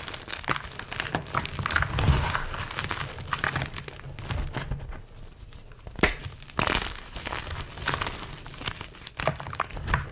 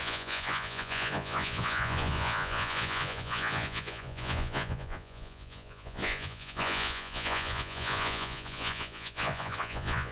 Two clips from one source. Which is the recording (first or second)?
first